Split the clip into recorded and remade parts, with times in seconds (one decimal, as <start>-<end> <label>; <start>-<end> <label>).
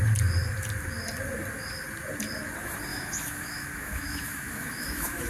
0.0-2.9 recorded; 2.9-5.3 remade